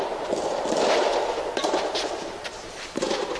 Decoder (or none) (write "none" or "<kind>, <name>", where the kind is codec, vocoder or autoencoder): none